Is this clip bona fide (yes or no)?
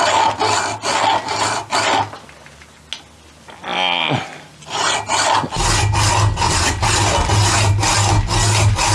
yes